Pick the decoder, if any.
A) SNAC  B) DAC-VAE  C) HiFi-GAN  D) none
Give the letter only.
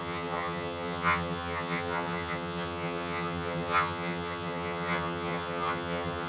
C